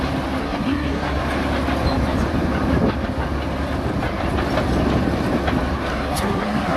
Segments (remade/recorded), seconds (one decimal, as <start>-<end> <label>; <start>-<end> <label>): 0.0-0.4 recorded; 0.4-1.2 remade; 1.2-5.9 recorded; 5.9-6.8 remade